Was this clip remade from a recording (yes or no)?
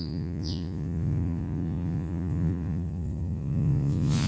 yes